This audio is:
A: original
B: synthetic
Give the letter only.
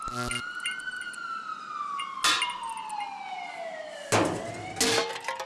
A